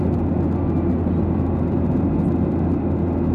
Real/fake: real